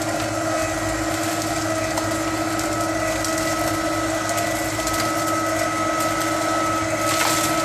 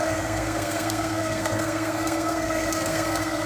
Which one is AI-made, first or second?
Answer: second